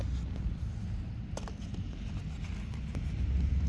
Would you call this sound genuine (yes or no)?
yes